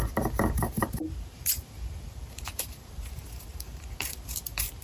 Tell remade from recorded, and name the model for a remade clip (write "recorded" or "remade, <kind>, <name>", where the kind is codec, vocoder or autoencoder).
remade, vocoder, BigVGAN v2